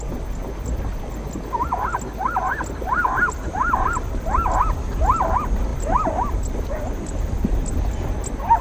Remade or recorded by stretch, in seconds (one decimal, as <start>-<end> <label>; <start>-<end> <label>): 0.0-8.6 recorded